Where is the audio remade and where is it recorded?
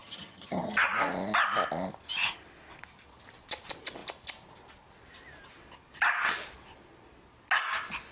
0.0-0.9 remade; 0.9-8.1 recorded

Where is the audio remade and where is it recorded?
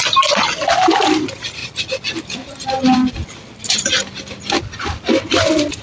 0.0-5.8 recorded